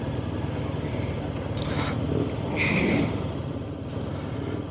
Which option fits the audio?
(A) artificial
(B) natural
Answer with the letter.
B